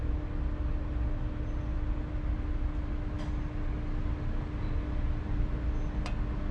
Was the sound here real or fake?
real